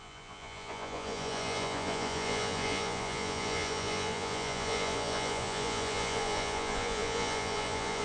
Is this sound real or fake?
fake